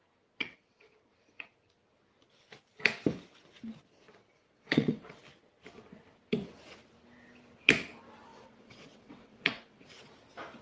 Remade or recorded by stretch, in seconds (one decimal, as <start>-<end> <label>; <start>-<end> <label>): 0.0-0.4 recorded; 0.4-1.1 remade; 1.1-4.4 recorded; 4.4-5.2 remade; 5.2-8.3 recorded; 8.3-9.8 remade; 9.8-10.6 recorded